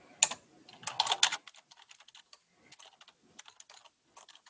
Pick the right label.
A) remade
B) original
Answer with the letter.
B